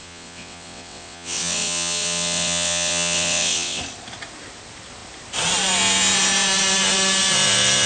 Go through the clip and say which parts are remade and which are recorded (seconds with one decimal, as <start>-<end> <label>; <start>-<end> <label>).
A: 0.0-3.8 remade; 3.8-7.9 recorded